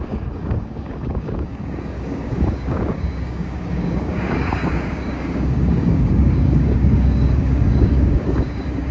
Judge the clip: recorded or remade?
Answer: remade